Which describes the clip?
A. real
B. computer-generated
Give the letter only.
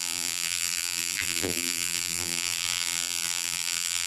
B